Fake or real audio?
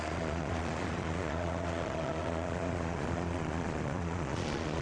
fake